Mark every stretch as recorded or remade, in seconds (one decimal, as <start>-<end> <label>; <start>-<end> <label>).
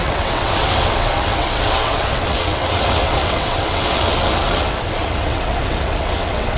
0.0-6.6 remade